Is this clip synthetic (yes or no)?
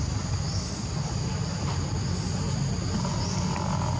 no